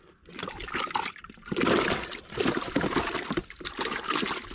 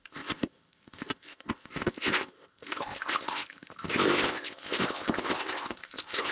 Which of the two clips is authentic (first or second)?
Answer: first